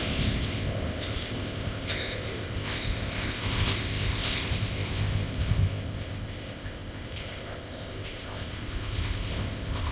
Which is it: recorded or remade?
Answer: remade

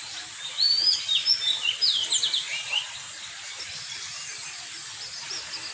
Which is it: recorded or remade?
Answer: recorded